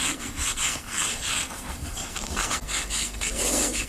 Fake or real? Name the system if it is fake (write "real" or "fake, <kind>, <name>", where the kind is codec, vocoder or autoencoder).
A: fake, codec, SNAC